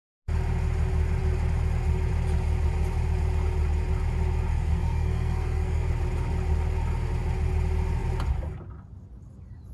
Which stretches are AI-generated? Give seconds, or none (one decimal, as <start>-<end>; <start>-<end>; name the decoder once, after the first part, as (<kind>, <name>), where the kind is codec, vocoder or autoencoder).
4.5-5.9 (codec, SNAC)